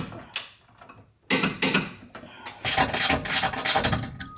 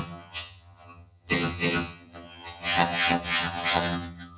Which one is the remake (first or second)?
second